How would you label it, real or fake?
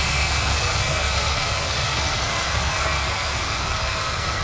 fake